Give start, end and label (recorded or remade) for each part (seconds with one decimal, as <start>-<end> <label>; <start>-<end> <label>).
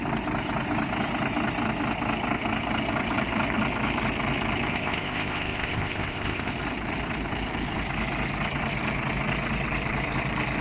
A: 0.0-4.7 recorded; 4.7-6.5 remade; 6.5-10.6 recorded